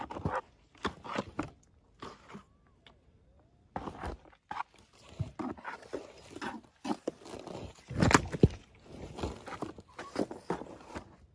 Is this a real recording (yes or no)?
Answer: yes